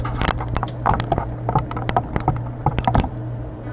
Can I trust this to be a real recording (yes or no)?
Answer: yes